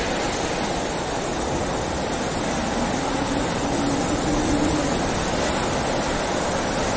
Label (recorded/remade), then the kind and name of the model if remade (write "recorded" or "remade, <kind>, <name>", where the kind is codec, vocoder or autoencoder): recorded